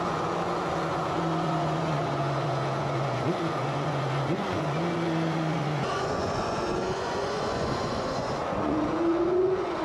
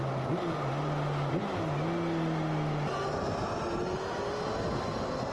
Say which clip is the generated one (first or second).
first